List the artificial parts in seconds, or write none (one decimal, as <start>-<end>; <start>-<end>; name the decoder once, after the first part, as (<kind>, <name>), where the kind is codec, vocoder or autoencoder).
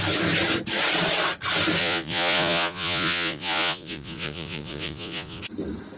1.8-5.4 (vocoder, Vocos)